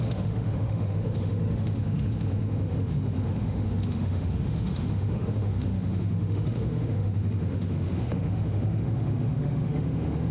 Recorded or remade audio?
remade